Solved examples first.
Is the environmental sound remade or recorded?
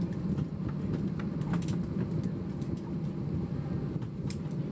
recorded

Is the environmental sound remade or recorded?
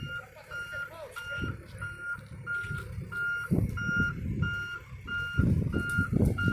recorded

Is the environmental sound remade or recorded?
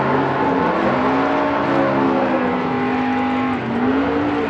recorded